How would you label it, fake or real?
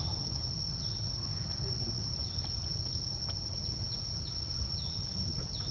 real